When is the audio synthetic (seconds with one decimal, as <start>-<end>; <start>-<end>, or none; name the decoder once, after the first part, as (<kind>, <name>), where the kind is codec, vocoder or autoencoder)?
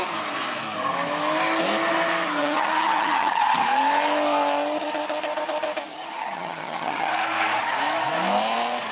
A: 2.4-3.4 (vocoder, HiFi-GAN); 5.9-7.1